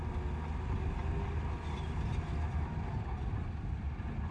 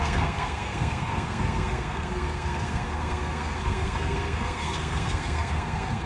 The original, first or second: first